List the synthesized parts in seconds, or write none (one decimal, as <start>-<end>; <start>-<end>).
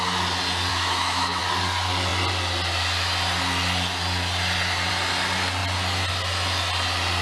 0.7-1.4